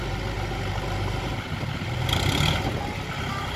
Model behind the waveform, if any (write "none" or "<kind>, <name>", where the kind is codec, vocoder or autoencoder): none